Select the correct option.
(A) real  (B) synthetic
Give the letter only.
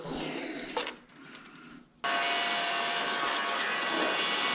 A